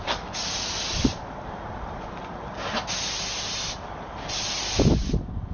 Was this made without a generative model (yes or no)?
yes